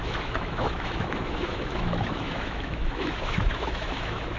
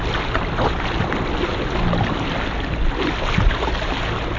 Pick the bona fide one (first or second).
second